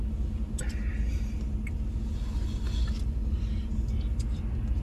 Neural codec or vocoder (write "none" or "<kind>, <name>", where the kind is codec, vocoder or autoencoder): none